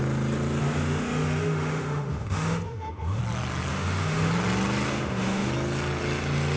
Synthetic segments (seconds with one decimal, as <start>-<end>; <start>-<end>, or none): 0.6-3.2; 3.7-4.3; 4.9-5.5